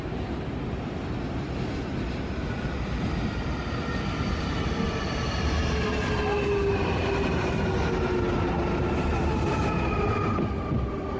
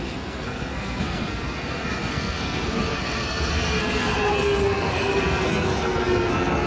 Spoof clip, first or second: second